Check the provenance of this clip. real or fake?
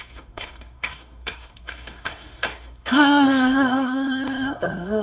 fake